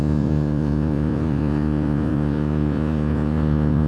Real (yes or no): no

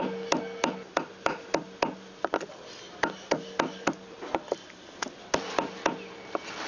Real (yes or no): yes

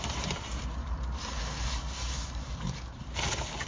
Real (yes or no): no